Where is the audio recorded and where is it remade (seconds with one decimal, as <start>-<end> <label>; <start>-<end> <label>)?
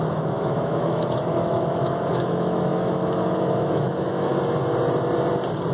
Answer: 0.0-4.3 remade; 4.3-5.7 recorded